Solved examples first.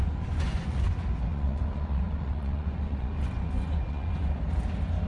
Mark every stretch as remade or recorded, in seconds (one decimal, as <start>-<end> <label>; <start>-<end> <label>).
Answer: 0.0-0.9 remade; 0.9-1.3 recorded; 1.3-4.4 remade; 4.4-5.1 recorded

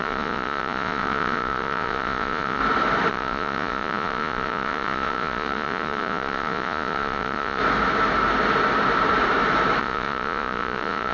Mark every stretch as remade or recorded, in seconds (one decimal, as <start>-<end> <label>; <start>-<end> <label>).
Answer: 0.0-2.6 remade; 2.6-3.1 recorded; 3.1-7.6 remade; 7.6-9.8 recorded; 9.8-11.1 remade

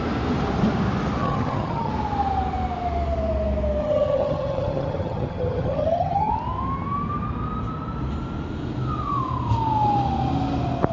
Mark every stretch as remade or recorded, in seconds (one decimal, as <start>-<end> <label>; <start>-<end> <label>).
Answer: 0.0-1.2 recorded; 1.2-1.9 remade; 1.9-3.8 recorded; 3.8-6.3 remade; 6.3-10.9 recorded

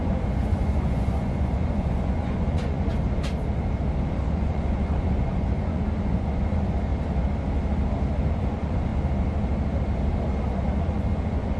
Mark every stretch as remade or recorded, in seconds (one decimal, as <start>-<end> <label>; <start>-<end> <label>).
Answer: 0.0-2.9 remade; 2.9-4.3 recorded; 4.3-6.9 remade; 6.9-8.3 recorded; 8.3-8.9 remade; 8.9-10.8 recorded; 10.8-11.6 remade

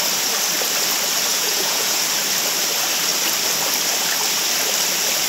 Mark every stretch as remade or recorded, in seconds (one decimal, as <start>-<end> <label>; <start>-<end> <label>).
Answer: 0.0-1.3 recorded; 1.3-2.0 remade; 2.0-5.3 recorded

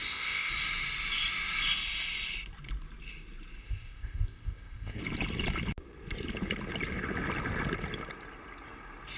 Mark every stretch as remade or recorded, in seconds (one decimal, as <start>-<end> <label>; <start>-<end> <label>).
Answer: 0.0-0.5 remade; 0.5-3.6 recorded; 3.6-5.0 remade; 5.0-9.2 recorded

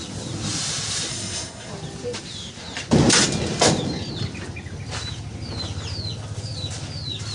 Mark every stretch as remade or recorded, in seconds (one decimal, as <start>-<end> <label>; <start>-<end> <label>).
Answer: 0.0-1.1 recorded; 1.1-1.7 remade; 1.7-7.3 recorded

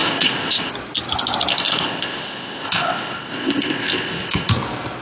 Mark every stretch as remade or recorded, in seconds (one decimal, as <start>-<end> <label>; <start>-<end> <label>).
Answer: 0.0-0.7 remade; 0.7-1.5 recorded; 1.5-4.5 remade; 4.5-5.0 recorded